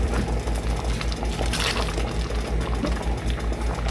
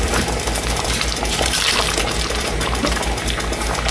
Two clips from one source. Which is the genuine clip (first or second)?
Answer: first